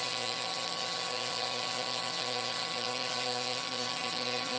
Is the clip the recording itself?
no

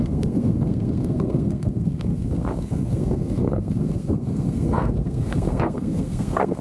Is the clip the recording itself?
no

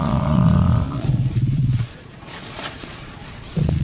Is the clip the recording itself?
no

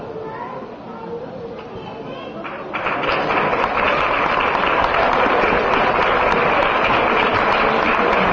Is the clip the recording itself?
yes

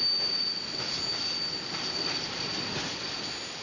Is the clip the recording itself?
yes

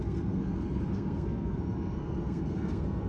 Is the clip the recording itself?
no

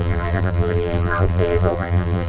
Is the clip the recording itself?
no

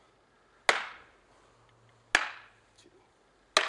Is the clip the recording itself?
yes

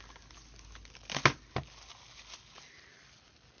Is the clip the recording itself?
yes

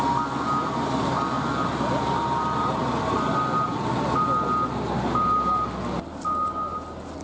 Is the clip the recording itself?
yes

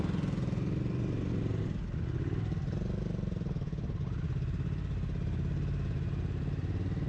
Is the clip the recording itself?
yes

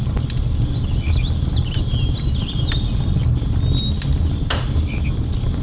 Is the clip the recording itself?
yes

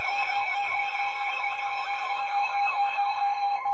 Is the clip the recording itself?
no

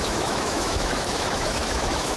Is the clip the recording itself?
no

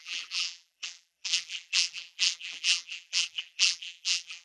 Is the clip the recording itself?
no